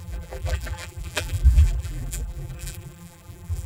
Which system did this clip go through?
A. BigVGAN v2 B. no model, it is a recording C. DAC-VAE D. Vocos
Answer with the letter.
A